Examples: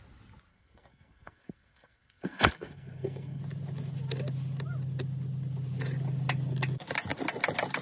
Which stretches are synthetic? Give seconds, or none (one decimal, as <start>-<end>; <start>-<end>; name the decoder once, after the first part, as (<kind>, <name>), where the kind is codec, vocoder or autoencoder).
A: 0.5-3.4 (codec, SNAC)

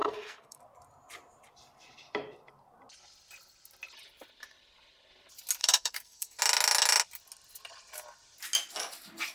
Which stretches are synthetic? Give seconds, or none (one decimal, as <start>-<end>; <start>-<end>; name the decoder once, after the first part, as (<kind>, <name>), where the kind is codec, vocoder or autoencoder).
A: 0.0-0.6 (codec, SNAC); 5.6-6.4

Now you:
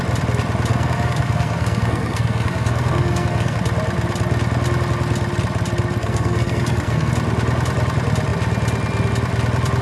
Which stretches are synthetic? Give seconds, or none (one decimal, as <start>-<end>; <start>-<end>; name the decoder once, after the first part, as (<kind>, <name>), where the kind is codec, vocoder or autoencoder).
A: 0.7-3.6 (codec, SNAC); 6.0-7.1

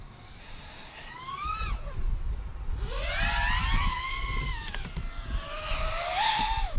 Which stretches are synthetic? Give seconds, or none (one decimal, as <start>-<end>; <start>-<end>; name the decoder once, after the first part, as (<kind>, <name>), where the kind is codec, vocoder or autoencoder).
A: 0.4-1.1 (codec, SNAC)